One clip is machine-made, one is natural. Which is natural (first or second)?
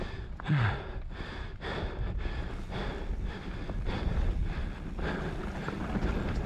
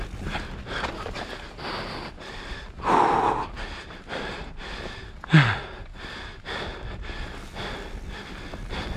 second